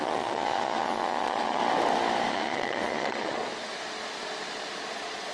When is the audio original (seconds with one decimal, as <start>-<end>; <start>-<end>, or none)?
1.6-2.3; 3.4-4.8